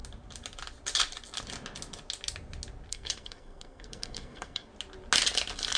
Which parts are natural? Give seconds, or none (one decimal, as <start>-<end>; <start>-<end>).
0.0-2.9; 4.7-5.8

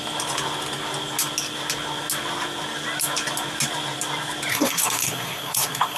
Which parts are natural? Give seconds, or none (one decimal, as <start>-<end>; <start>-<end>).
0.0-4.5